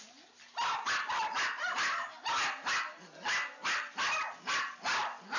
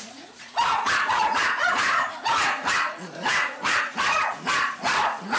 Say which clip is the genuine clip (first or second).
first